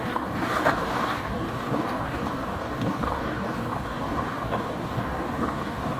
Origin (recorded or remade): remade